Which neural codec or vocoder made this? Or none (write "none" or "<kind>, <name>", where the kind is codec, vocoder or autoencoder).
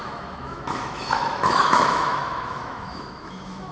autoencoder, DAC-VAE